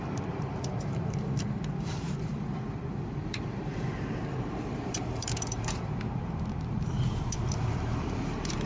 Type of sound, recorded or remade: remade